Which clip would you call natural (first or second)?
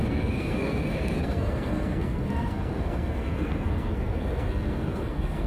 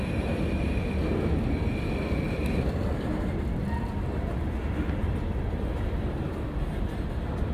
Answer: second